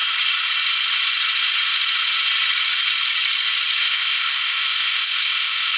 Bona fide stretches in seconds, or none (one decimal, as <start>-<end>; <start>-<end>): 0.0-3.8